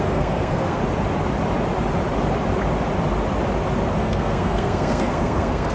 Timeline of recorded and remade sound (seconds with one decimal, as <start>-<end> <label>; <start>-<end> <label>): 0.0-0.8 remade; 0.8-3.9 recorded; 3.9-5.7 remade